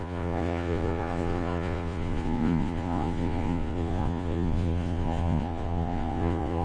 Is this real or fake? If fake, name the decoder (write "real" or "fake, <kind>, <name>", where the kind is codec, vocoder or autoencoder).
fake, vocoder, Vocos